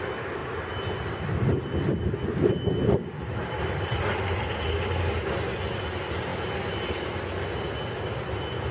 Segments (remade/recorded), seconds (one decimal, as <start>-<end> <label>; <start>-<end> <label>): 0.0-8.7 recorded